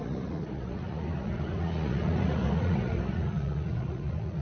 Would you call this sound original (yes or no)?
no